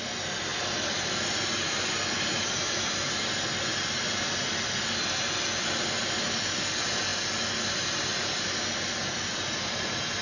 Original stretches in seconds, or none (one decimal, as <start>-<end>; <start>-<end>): 0.0-10.2